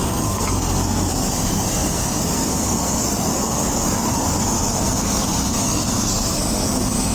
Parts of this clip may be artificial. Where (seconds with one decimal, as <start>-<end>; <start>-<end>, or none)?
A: 0.0-7.1